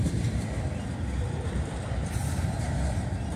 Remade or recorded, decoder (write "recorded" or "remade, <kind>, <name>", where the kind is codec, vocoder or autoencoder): recorded